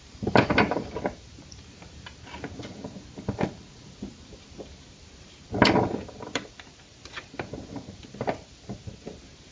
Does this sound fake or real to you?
fake